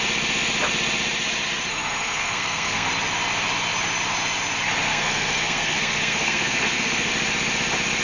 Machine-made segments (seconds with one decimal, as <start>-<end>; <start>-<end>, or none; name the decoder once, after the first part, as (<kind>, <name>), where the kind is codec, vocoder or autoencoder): 1.7-2.9 (codec, SNAC); 4.9-7.1